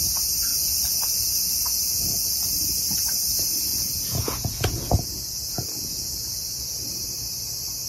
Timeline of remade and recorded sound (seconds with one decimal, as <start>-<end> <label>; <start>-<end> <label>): 0.0-0.5 recorded; 0.5-2.5 remade; 2.5-3.7 recorded; 3.7-6.8 remade; 6.8-7.9 recorded